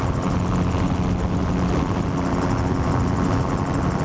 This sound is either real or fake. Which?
real